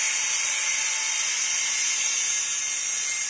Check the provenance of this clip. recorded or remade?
recorded